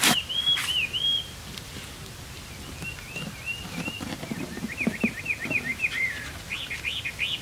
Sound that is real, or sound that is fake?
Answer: real